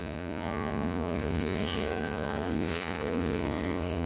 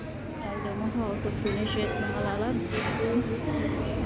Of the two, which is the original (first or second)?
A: second